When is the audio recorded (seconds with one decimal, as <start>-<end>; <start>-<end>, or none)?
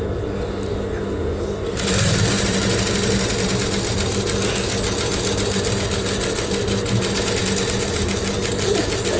0.0-9.2